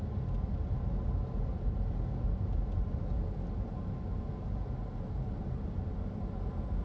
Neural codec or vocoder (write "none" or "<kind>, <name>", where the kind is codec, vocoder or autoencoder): none